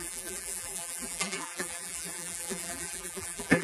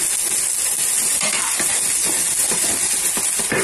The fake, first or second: first